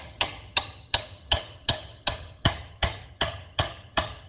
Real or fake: fake